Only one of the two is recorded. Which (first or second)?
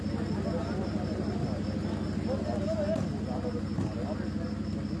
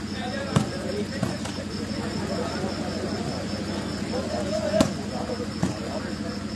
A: first